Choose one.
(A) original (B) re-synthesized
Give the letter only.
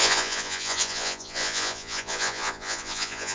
B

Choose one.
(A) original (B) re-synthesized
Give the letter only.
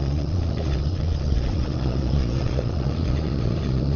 B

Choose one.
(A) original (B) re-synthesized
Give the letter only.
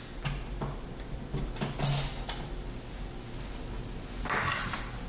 A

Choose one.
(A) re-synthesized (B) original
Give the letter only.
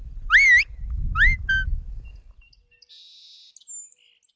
B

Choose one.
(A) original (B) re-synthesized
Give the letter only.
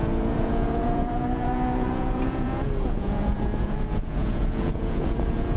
B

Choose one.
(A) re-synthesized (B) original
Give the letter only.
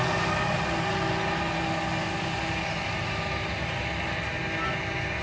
B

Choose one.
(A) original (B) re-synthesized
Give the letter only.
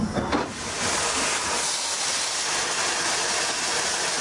A